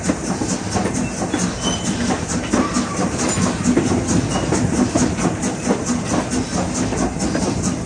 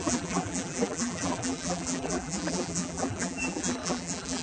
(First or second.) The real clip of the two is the first